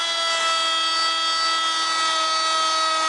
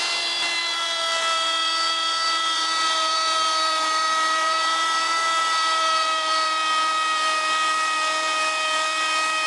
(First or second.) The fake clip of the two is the second